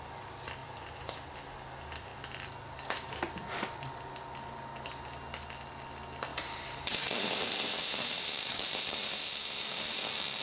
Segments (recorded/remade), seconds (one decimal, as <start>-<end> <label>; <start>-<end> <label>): 0.0-0.6 recorded; 0.6-1.3 remade; 1.3-6.3 recorded; 6.3-10.0 remade; 10.0-10.4 recorded